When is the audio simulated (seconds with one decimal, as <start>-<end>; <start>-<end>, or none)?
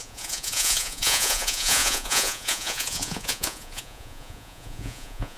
0.0-5.4